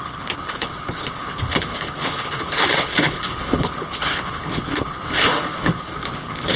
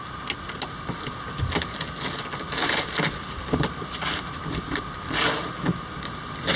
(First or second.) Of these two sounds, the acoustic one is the second